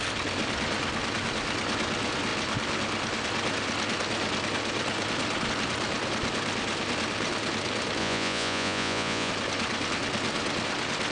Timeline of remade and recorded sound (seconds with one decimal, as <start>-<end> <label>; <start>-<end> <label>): 0.0-8.0 recorded; 8.0-9.3 remade; 9.3-11.1 recorded